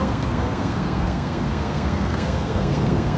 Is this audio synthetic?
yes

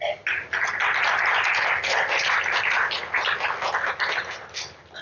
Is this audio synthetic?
no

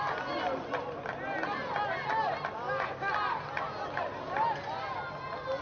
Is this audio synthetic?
no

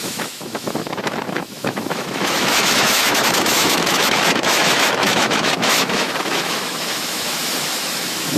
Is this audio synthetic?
yes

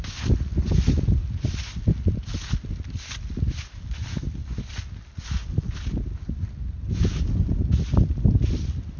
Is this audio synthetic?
no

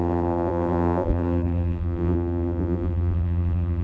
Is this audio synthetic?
yes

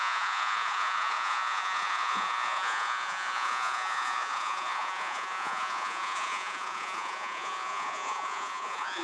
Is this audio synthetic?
yes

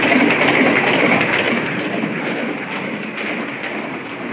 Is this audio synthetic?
no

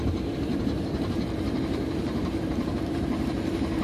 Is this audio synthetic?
yes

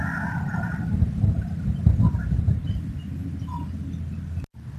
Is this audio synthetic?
no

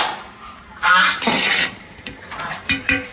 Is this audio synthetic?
yes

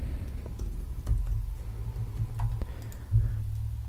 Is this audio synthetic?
no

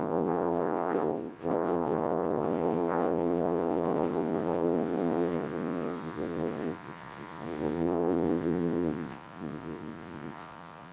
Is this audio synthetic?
yes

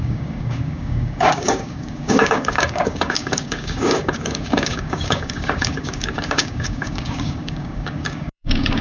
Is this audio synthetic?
yes